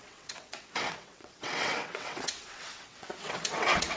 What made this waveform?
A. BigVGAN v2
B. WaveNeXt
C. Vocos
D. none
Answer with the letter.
B